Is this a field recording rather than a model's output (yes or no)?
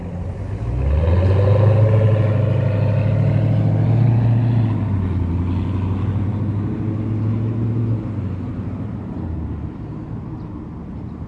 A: yes